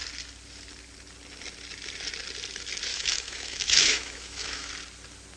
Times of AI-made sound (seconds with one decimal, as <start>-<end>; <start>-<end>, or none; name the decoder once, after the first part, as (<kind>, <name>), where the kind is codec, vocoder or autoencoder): 2.9-4.7 (autoencoder, DAC-VAE)